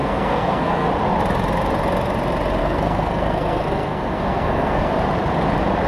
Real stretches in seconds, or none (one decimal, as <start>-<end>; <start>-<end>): 0.9-2.6; 4.9-5.9